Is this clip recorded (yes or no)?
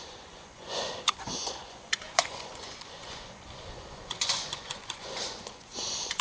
no